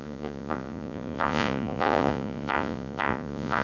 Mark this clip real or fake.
fake